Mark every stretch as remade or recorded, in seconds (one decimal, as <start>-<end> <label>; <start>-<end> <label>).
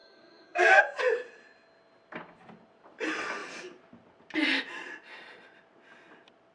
0.0-0.8 remade; 0.8-6.5 recorded